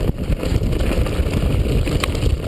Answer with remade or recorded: recorded